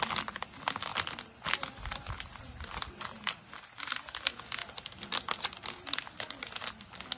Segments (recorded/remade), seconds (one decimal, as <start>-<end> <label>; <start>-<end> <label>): 0.0-0.9 recorded; 0.9-3.5 remade; 3.5-4.6 recorded; 4.6-6.3 remade; 6.3-7.2 recorded